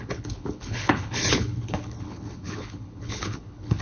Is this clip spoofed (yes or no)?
yes